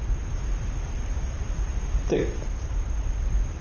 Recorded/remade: recorded